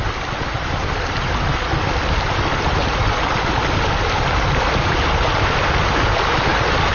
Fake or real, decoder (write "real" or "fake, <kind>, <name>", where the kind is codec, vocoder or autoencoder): real